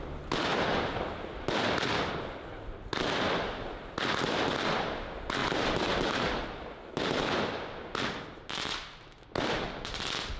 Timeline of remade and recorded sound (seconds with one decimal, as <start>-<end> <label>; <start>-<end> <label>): 0.0-10.4 recorded